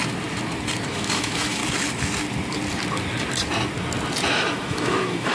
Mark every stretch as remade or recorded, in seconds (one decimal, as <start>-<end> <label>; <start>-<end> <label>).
0.0-0.9 recorded; 0.9-1.6 remade; 1.6-4.3 recorded; 4.3-5.3 remade